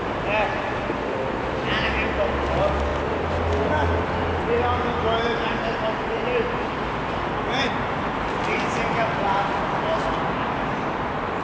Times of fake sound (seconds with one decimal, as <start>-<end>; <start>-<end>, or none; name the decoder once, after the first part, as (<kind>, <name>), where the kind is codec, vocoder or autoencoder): none